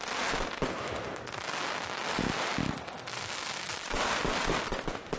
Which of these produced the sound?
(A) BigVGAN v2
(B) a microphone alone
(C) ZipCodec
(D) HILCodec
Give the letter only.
B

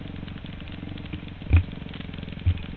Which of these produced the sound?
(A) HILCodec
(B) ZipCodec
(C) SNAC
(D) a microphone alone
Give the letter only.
D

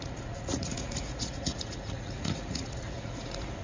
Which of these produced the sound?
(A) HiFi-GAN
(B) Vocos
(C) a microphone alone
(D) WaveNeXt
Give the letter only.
B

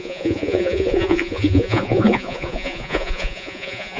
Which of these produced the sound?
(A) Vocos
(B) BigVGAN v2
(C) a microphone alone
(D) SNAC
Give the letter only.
A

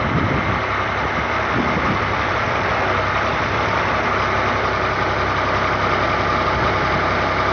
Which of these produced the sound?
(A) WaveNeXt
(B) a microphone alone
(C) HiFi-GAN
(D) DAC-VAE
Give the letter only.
B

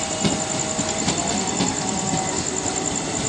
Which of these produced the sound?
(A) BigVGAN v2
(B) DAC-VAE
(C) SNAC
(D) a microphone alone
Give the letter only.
D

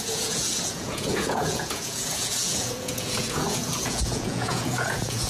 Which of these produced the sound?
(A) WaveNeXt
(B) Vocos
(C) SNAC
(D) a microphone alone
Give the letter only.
B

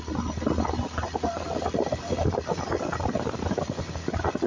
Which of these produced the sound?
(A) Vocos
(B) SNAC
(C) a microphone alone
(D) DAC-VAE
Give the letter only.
C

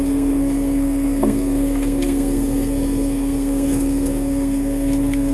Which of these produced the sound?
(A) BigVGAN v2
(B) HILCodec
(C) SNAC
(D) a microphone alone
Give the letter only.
C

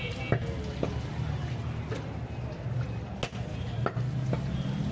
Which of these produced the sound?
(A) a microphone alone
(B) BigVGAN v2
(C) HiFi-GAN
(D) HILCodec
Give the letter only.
A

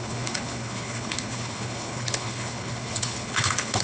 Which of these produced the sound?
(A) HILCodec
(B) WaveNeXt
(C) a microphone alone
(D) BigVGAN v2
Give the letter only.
A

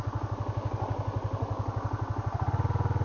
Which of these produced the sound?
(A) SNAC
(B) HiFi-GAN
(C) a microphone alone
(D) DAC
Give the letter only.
C